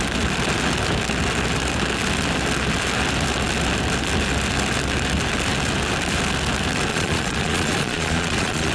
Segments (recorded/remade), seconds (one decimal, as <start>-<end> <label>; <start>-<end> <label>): 0.0-6.9 recorded; 6.9-8.7 remade

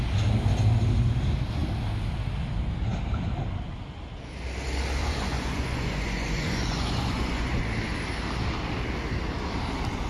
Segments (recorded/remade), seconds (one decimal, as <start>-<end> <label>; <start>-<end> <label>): 0.0-5.0 recorded; 5.0-7.6 remade; 7.6-10.1 recorded

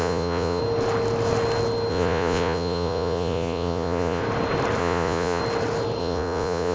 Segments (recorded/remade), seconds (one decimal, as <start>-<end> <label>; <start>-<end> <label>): 0.0-0.6 remade; 0.6-1.9 recorded; 1.9-4.2 remade; 4.2-4.8 recorded; 4.8-5.4 remade; 5.4-6.0 recorded; 6.0-6.7 remade

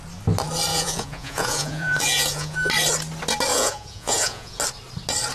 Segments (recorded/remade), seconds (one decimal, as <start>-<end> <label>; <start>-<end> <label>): 0.0-0.7 recorded; 0.7-2.7 remade; 2.7-3.5 recorded; 3.5-4.6 remade; 4.6-5.3 recorded

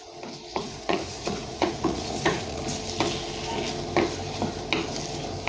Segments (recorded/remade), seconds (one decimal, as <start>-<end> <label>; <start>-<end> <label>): 0.0-0.5 recorded; 0.5-2.6 remade; 2.6-5.5 recorded